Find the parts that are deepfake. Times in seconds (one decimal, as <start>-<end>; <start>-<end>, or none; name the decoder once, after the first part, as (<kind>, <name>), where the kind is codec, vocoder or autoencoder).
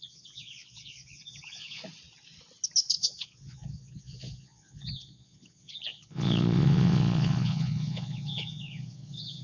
0.0-1.8 (vocoder, Vocos); 3.0-9.4